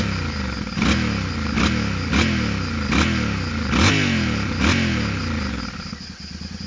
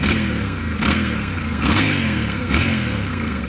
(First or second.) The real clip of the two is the first